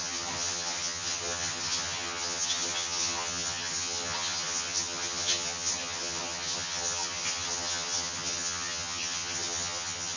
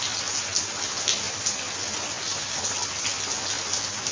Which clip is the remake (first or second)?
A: first